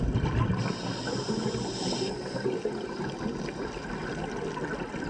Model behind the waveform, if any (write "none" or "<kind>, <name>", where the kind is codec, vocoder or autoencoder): none